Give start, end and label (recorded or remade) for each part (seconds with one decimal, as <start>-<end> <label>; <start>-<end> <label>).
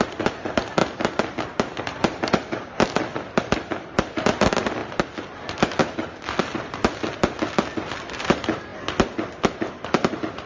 0.0-0.8 remade; 0.8-1.8 recorded; 1.8-4.8 remade; 4.8-6.4 recorded; 6.4-8.7 remade; 8.7-9.5 recorded; 9.5-10.5 remade